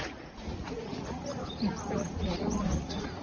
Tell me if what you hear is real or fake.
fake